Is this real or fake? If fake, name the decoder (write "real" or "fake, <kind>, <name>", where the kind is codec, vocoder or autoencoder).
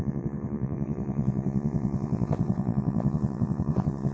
fake, vocoder, WaveNeXt